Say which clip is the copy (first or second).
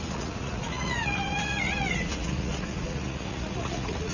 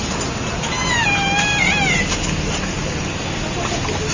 first